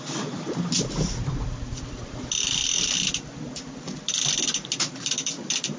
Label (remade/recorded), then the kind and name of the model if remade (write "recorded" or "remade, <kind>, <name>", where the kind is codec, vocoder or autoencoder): remade, vocoder, BigVGAN v2